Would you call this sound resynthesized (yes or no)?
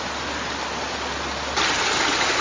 no